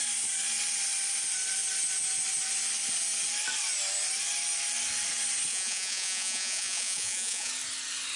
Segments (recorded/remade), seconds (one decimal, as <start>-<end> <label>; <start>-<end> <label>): 0.0-5.5 recorded; 5.5-7.5 remade; 7.5-8.2 recorded